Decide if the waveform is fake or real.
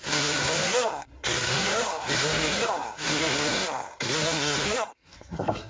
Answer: fake